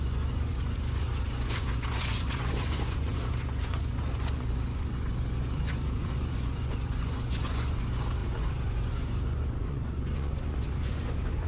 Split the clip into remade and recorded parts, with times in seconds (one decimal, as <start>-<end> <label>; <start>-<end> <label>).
0.0-11.5 remade